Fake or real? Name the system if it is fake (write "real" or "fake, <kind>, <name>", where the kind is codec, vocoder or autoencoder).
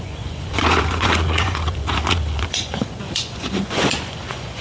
fake, vocoder, Vocos